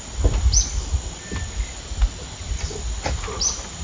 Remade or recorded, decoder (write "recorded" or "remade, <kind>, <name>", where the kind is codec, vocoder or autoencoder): recorded